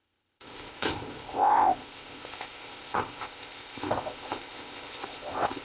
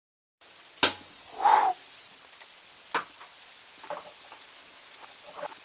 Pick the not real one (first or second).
first